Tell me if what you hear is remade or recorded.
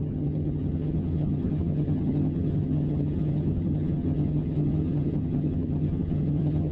remade